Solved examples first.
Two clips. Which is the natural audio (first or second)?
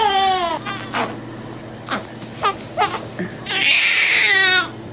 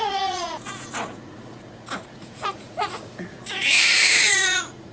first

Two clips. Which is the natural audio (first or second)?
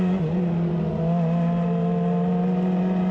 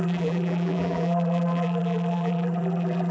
first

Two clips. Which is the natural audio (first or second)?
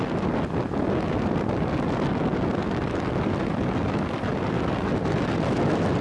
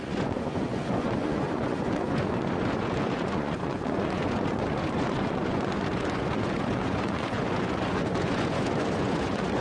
first